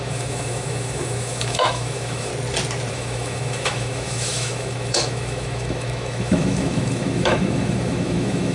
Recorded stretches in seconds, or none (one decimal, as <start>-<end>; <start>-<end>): 2.3-2.9